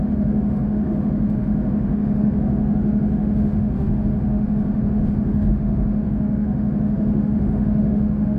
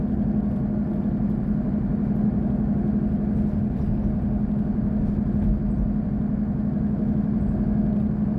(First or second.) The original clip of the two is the second